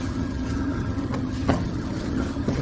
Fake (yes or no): yes